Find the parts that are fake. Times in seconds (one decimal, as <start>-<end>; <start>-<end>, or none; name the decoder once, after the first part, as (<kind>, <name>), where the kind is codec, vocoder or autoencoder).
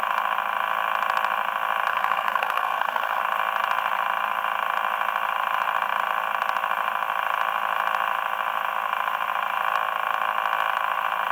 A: 1.9-3.2 (codec, SNAC)